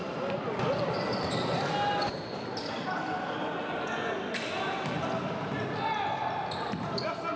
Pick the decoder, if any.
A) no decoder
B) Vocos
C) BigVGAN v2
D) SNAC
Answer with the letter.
A